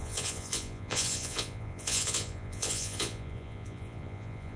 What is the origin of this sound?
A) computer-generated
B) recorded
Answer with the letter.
A